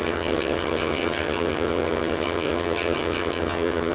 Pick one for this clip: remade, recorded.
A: remade